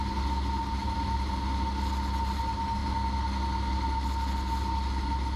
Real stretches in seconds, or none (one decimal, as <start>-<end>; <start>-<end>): 0.0-5.4